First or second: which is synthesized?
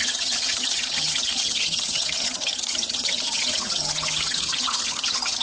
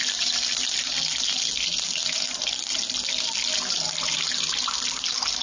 first